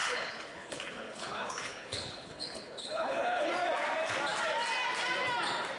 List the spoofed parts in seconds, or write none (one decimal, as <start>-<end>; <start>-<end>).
0.0-3.5